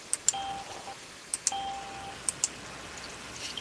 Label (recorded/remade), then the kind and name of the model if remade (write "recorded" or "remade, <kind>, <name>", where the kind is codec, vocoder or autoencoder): recorded